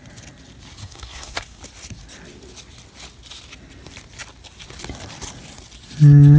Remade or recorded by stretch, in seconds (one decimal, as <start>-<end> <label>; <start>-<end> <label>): 0.0-0.8 recorded; 0.8-1.6 remade; 1.6-6.4 recorded